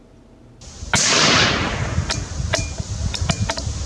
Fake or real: real